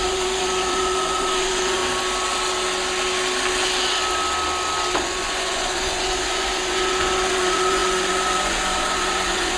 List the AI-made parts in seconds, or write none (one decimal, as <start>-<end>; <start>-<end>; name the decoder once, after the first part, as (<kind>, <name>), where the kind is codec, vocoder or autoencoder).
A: 0.0-1.8 (vocoder, Vocos); 5.0-9.6